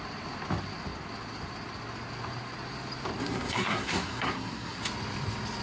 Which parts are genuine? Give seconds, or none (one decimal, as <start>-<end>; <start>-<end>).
0.0-3.2; 4.8-5.6